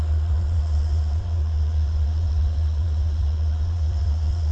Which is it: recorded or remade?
remade